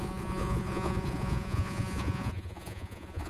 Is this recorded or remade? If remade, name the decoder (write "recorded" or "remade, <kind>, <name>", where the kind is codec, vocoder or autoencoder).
remade, vocoder, Vocos